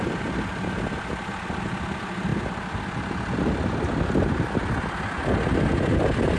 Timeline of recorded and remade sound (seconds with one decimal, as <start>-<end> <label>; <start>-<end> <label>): 0.0-6.4 recorded